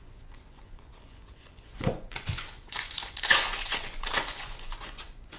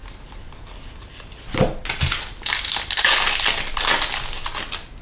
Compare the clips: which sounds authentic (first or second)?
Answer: second